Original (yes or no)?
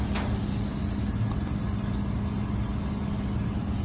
yes